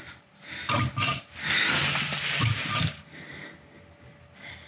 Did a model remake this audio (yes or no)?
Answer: no